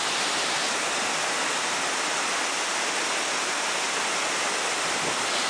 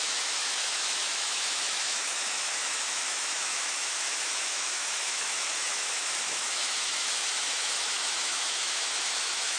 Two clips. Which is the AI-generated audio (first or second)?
second